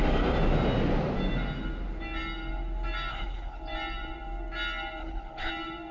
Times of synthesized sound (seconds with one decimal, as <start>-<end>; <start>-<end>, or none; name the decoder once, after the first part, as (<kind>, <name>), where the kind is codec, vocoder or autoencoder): 3.1-3.6 (codec, HILCodec); 5.0-5.5